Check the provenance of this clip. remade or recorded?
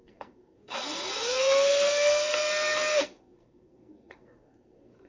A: remade